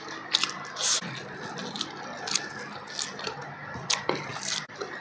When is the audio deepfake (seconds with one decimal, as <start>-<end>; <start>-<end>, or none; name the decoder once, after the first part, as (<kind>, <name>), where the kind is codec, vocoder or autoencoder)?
none